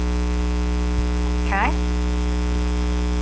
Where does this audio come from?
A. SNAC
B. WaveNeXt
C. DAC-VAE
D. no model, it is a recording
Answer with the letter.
C